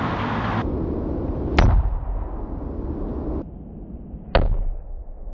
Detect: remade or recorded recorded